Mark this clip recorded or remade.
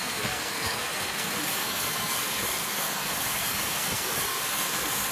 remade